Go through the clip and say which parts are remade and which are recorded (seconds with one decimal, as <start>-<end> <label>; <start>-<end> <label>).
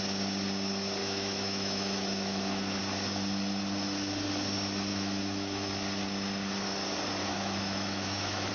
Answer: 0.0-1.0 recorded; 1.0-2.8 remade; 2.8-4.9 recorded; 4.9-5.7 remade; 5.7-7.3 recorded; 7.3-8.5 remade